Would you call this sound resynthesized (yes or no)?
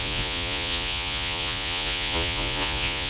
yes